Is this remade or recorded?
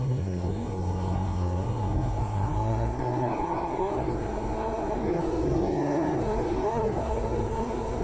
remade